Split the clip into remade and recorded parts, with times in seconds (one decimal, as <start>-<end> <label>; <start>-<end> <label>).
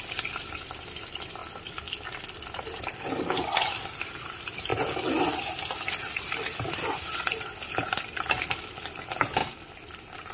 0.0-4.7 remade; 4.7-6.2 recorded; 6.2-9.4 remade; 9.4-10.3 recorded